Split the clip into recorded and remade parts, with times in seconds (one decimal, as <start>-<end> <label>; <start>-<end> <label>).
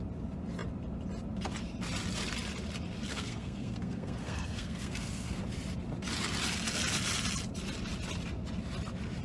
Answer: 0.0-3.1 recorded; 3.1-5.4 remade; 5.4-9.2 recorded